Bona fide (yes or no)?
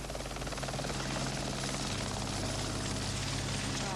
yes